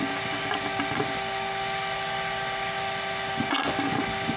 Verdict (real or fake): real